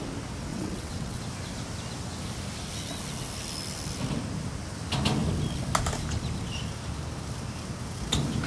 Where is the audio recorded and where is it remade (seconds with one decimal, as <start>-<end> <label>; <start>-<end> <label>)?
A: 0.0-0.5 recorded; 0.5-1.2 remade; 1.2-8.5 recorded